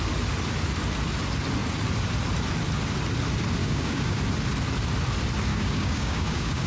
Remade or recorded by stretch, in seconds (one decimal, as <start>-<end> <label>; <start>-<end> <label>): 0.0-3.6 recorded; 3.6-4.2 remade; 4.2-5.5 recorded; 5.5-6.7 remade